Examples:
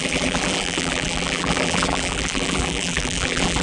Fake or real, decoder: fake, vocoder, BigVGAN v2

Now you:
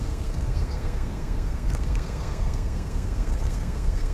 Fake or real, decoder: fake, codec, SNAC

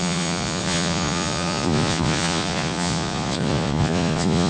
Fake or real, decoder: fake, vocoder, Vocos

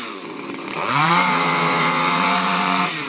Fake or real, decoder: fake, vocoder, Vocos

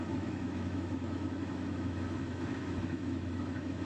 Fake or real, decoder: fake, autoencoder, DAC-VAE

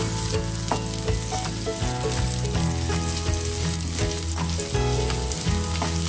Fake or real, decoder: real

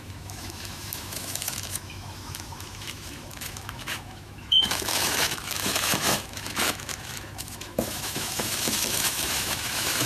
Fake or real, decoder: fake, autoencoder, DAC-VAE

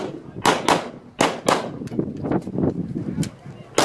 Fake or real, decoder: real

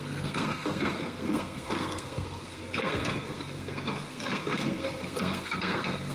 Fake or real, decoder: fake, codec, SNAC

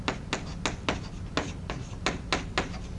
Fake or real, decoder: real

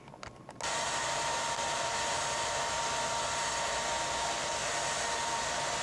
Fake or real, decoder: real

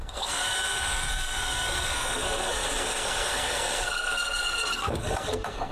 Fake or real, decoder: fake, codec, SNAC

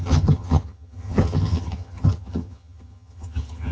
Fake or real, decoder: fake, vocoder, HiFi-GAN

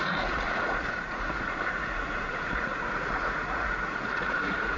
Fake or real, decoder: fake, vocoder, Vocos